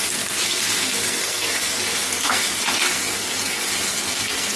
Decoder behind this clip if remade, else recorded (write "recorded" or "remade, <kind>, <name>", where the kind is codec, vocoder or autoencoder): remade, codec, SNAC